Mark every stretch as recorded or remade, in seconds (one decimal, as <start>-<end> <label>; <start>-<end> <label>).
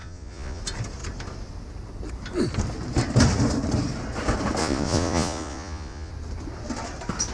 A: 0.0-0.6 remade; 0.6-4.6 recorded; 4.6-6.1 remade; 6.1-7.3 recorded